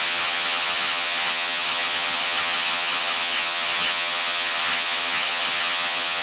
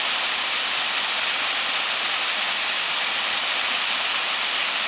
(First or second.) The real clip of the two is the second